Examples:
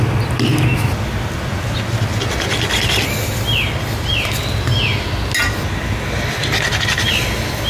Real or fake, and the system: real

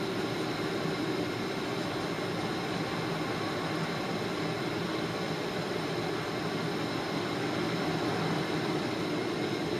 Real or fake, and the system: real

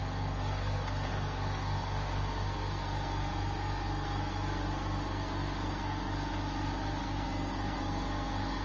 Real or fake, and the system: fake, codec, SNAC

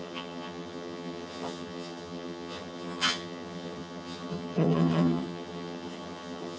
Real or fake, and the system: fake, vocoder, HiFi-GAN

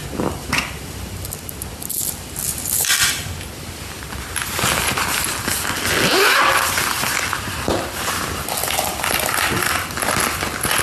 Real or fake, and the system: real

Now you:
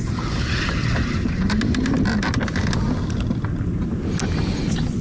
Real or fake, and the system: real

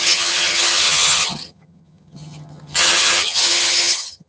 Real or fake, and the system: fake, vocoder, HiFi-GAN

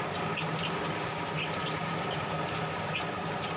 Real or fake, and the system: real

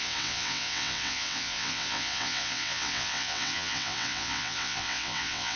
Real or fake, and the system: fake, vocoder, WaveNeXt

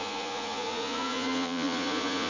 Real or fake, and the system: fake, vocoder, Vocos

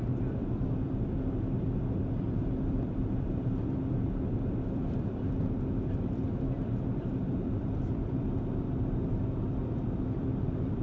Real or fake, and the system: fake, vocoder, BigVGAN v2